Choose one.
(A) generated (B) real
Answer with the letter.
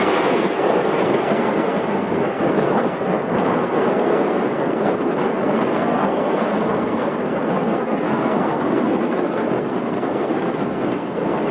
A